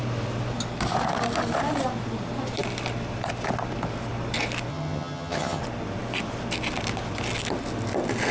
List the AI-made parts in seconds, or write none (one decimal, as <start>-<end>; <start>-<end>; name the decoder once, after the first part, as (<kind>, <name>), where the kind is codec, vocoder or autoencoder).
4.7-5.6 (vocoder, HiFi-GAN)